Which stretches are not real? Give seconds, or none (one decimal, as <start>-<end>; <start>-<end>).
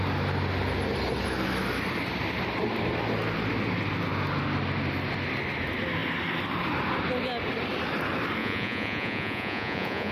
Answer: 8.4-10.1